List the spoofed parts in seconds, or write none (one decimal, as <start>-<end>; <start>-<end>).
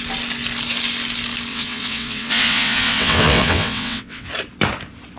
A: 1.5-4.3